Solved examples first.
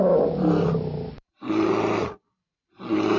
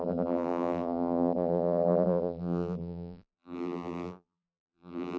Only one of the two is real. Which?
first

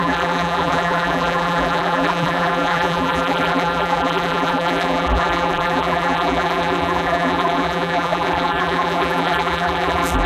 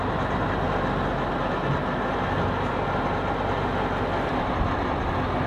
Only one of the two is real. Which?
second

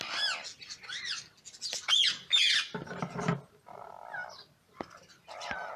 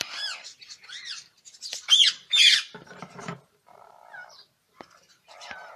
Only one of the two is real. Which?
first